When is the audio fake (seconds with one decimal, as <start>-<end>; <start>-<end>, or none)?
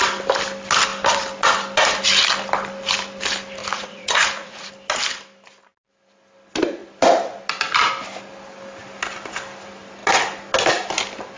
3.6-4.7